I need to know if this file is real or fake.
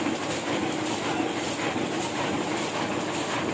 real